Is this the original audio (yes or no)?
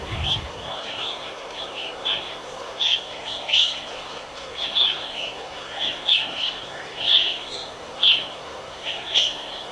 no